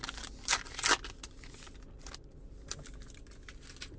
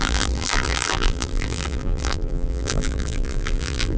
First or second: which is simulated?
second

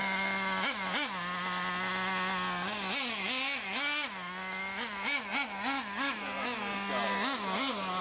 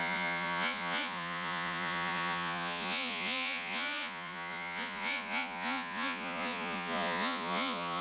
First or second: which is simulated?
second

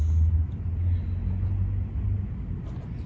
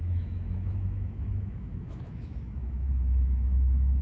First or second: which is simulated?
second